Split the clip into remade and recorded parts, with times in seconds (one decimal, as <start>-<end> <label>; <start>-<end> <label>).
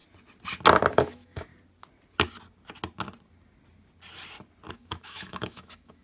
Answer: 0.0-0.9 recorded; 0.9-1.5 remade; 1.5-4.7 recorded; 4.7-6.0 remade